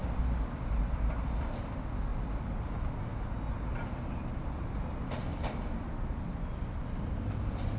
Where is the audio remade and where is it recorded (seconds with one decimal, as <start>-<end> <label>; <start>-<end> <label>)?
0.0-1.1 remade; 1.1-5.3 recorded; 5.3-7.8 remade